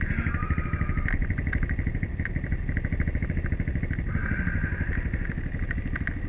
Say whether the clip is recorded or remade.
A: recorded